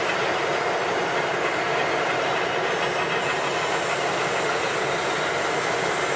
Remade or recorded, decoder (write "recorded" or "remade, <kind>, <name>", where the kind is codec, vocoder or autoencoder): recorded